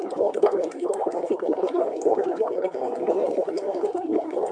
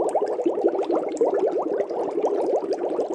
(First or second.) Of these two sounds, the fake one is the first